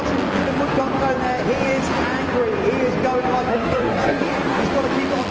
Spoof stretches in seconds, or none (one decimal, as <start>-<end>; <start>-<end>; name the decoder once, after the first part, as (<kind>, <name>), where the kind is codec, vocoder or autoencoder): 3.5-4.6 (codec, SNAC)